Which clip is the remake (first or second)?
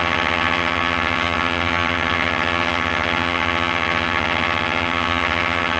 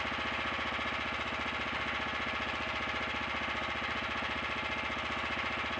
first